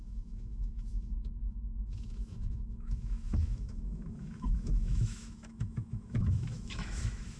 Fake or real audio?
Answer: fake